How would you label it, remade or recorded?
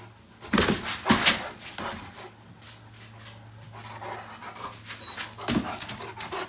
recorded